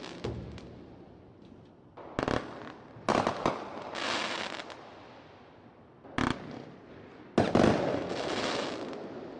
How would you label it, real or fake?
real